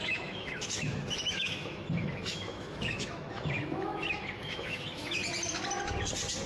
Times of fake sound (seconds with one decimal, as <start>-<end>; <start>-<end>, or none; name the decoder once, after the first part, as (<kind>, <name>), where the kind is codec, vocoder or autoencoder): 0.0-5.2 (autoencoder, DAC-VAE)